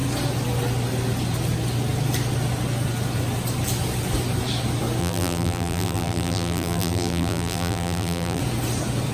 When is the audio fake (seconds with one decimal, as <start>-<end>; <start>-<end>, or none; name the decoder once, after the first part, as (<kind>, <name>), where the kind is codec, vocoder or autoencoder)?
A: 5.0-8.4 (vocoder, BigVGAN v2)